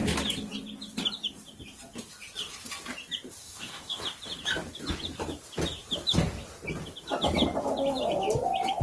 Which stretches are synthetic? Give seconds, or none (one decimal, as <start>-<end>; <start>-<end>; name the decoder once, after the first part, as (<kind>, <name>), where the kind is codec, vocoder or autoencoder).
3.4-4.0 (codec, DAC)